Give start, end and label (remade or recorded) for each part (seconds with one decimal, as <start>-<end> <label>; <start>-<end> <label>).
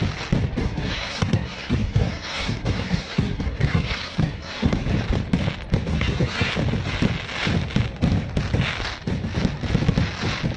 0.0-0.6 recorded; 0.6-4.9 remade; 4.9-5.9 recorded; 5.9-6.5 remade; 6.5-10.6 recorded